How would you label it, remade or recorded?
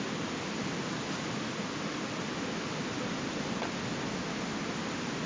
recorded